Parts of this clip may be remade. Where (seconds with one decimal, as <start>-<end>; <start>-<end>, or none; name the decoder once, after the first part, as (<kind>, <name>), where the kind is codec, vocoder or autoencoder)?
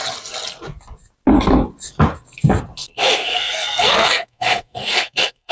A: 2.8-5.5 (codec, SNAC)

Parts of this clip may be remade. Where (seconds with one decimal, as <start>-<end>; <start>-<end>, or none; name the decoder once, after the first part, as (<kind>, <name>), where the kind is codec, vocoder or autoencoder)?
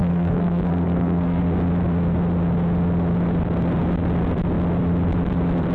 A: 0.0-1.4 (codec, SNAC)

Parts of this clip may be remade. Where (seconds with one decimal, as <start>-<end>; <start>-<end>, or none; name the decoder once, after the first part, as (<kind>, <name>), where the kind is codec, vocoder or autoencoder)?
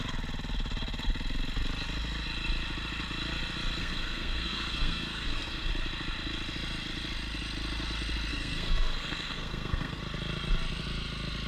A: 3.8-5.7 (codec, SNAC); 8.3-10.0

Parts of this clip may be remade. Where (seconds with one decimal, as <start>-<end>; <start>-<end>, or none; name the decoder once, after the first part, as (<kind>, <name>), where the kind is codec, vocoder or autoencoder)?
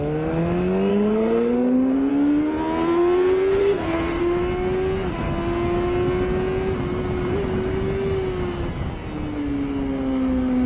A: 0.9-2.1 (codec, SNAC); 3.6-4.2